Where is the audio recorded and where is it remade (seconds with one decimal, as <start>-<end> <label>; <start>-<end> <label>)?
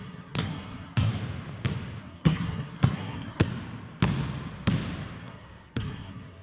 0.0-1.1 remade; 1.1-2.0 recorded; 2.0-3.5 remade; 3.5-5.2 recorded; 5.2-6.4 remade